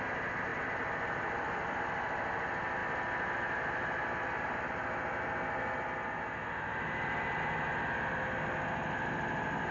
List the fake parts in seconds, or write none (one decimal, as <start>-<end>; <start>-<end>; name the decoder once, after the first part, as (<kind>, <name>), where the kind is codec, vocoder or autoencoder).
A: 0.5-1.8 (vocoder, BigVGAN v2)